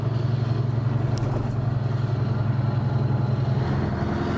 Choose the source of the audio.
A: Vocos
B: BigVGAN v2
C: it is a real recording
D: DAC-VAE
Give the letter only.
C